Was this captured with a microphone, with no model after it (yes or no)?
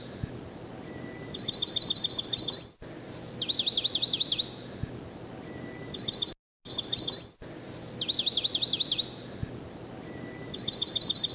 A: yes